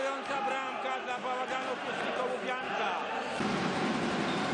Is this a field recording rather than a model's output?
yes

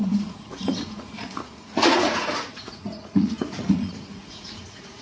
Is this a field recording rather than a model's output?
no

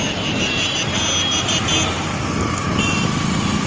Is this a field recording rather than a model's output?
yes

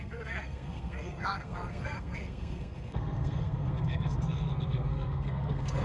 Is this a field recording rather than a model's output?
no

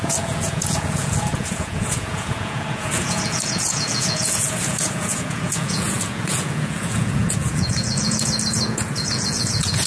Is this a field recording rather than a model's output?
no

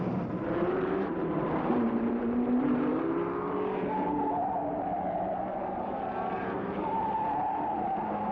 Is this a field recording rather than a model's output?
no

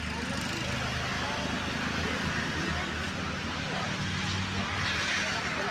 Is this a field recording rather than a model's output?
yes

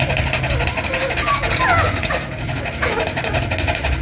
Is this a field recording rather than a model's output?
yes